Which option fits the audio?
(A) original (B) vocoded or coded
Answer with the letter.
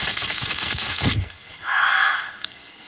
B